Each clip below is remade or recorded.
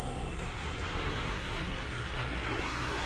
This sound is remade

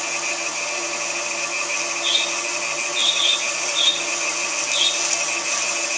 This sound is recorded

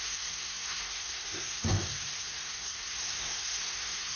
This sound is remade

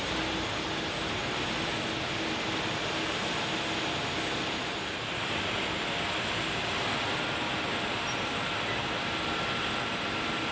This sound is recorded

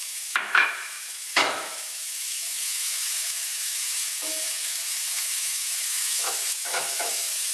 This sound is remade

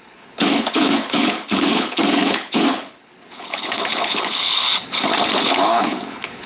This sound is remade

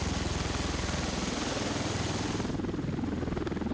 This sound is recorded